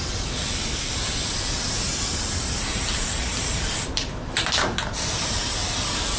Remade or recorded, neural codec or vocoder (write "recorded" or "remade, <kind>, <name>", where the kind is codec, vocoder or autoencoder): remade, vocoder, BigVGAN v2